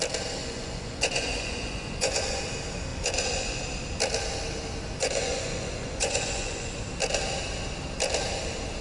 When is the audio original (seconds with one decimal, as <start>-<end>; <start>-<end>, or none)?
0.0-0.4; 2.4-2.9; 3.6-5.0; 6.8-8.8